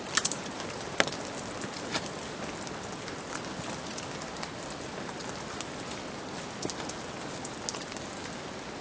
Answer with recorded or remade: recorded